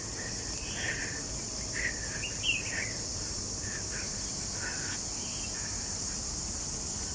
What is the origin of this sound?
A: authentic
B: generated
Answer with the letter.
A